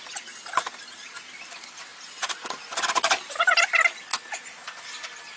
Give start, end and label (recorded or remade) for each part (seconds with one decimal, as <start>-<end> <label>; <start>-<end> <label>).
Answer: 0.0-5.4 recorded